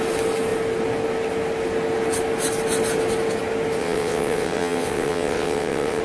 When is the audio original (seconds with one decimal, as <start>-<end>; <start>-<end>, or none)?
0.0-3.8